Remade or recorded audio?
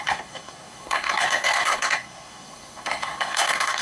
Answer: remade